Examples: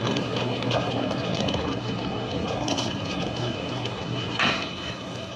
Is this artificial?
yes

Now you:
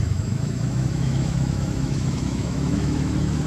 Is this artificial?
yes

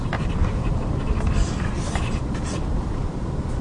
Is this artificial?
yes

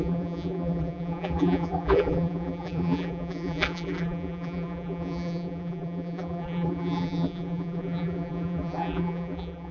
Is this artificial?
yes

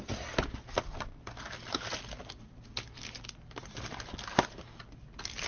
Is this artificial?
no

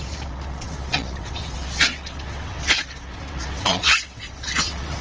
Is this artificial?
yes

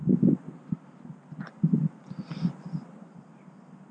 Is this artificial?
no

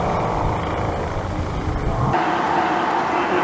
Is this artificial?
no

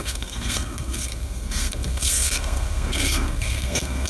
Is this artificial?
yes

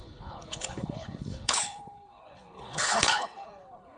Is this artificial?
yes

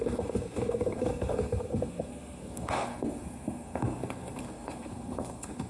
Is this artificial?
yes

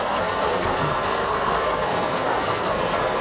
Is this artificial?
yes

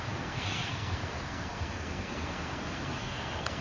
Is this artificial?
yes